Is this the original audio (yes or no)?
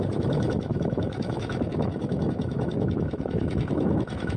no